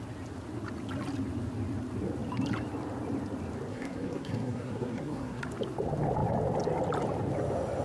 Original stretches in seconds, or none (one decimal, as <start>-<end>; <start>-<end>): 0.0-3.7; 5.4-7.8